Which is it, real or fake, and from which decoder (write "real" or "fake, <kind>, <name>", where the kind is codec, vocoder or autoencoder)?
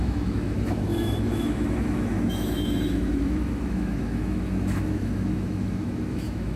fake, autoencoder, DAC-VAE